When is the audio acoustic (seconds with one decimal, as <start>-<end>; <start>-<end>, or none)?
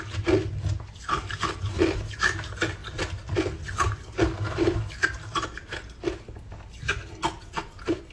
0.0-8.1